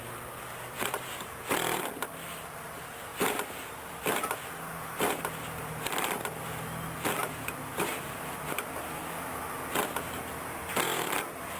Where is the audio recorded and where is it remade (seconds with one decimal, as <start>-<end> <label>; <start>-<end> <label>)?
0.0-11.6 recorded